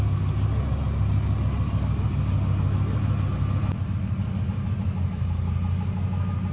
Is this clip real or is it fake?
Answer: real